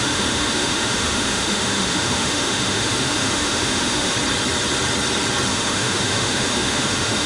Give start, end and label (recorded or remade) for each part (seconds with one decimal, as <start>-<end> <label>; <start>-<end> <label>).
0.0-4.1 remade; 4.1-5.5 recorded; 5.5-7.3 remade